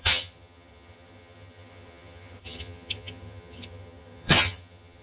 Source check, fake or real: fake